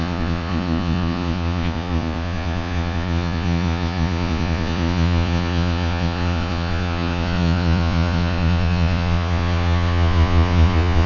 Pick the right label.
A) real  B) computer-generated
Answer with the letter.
B